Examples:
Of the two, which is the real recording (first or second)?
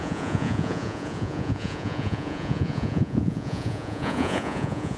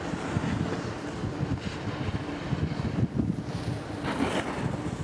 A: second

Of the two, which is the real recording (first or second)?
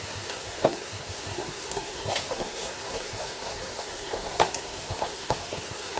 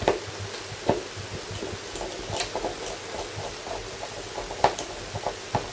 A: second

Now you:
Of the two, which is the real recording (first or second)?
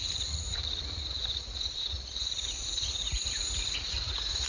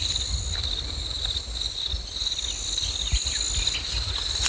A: second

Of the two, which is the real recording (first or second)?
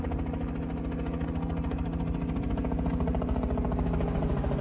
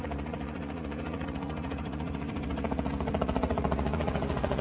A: first